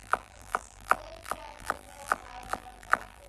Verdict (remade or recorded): remade